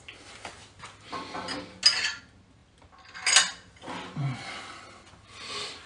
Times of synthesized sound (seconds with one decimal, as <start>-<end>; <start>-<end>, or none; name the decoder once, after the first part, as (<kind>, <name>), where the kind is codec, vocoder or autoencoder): none